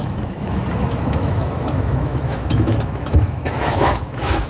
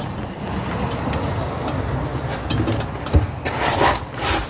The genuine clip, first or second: second